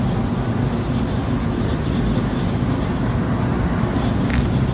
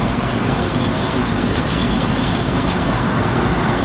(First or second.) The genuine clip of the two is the first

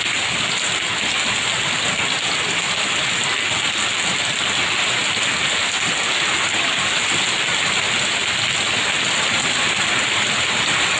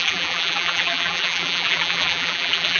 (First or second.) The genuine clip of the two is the first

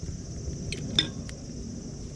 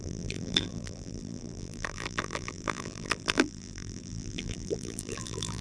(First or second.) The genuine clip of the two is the first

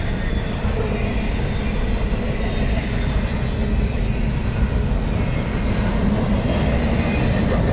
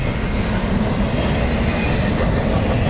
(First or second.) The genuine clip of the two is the first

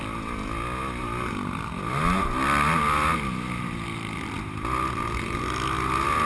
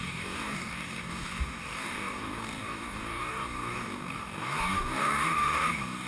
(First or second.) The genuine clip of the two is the first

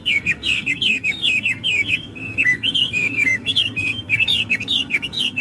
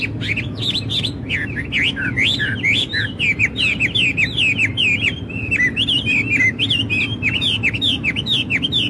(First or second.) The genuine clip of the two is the second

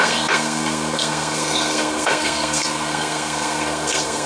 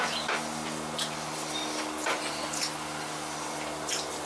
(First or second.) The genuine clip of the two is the second